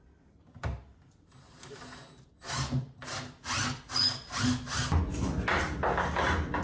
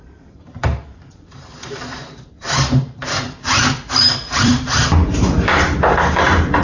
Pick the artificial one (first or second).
second